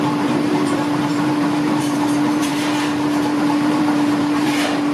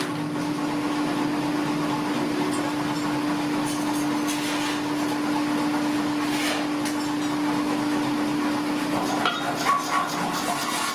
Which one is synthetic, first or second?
first